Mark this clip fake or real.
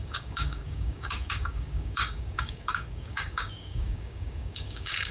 fake